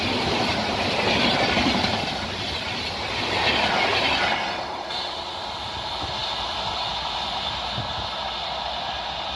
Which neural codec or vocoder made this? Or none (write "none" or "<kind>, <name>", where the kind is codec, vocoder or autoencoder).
none